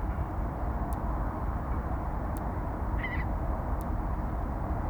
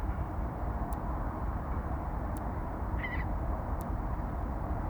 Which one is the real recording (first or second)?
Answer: first